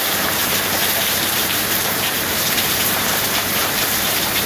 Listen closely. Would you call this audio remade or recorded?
remade